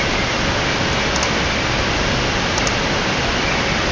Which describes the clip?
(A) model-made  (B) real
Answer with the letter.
B